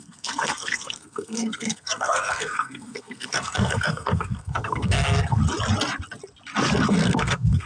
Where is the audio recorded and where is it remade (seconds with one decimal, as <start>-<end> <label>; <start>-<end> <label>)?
0.0-5.4 remade; 5.4-6.9 recorded; 6.9-7.7 remade